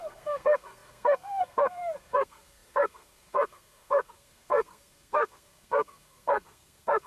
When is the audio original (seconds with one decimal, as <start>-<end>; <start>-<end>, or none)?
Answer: none